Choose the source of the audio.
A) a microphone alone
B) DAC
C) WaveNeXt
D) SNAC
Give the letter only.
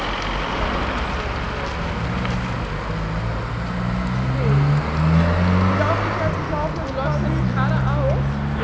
A